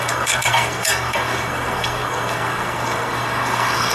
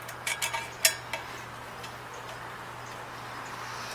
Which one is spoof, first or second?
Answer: first